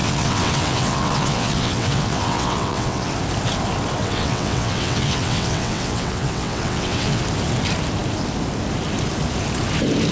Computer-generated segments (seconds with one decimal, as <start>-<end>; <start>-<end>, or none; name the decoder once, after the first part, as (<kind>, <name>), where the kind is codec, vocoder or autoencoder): 0.0-3.1 (vocoder, WaveNeXt); 4.0-7.2